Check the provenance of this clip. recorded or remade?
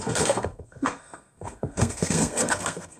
remade